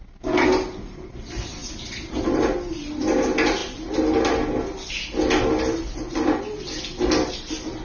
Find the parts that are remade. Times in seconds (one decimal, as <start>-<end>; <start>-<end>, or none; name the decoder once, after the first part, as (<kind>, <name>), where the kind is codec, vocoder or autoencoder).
none